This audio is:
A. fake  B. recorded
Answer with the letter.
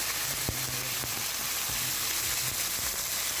B